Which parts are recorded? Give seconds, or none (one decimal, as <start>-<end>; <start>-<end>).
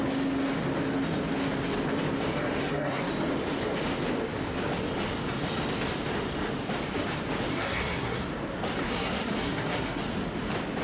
0.0-2.6; 3.1-7.5; 8.2-8.8; 10.0-10.8